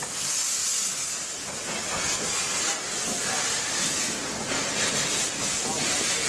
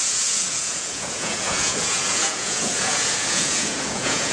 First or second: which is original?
first